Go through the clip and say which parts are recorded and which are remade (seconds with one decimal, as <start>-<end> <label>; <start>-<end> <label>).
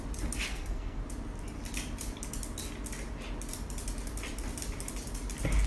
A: 0.0-0.5 recorded; 0.5-1.0 remade; 1.0-5.7 recorded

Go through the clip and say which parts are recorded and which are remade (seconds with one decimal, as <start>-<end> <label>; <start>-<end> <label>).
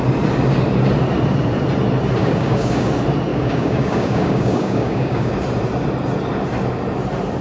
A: 0.0-2.2 recorded; 2.2-2.9 remade; 2.9-3.3 recorded; 3.3-5.3 remade; 5.3-7.4 recorded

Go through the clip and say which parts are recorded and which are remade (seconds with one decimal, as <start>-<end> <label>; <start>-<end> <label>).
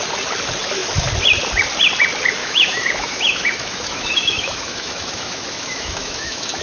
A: 0.0-2.4 recorded; 2.4-6.6 remade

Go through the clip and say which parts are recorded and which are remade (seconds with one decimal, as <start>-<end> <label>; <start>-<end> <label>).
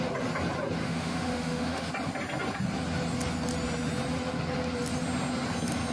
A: 0.0-0.8 recorded; 0.8-1.9 remade; 1.9-5.9 recorded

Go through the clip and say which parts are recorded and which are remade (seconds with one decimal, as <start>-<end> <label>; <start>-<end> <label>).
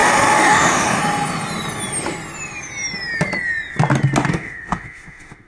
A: 0.0-1.0 remade; 1.0-4.3 recorded; 4.3-5.5 remade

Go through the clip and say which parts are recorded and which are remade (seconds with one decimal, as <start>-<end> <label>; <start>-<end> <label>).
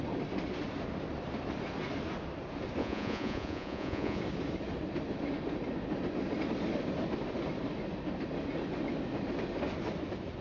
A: 0.0-2.8 recorded; 2.8-4.2 remade; 4.2-10.4 recorded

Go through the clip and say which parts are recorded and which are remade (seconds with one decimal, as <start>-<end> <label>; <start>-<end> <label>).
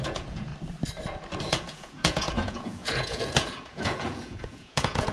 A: 0.0-0.5 remade; 0.5-1.5 recorded; 1.5-5.1 remade